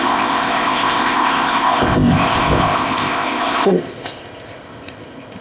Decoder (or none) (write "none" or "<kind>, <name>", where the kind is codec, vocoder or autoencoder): codec, ZipCodec